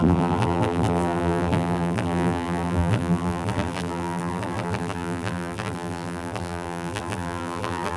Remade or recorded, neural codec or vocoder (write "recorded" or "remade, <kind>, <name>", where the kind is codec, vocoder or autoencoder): remade, vocoder, BigVGAN v2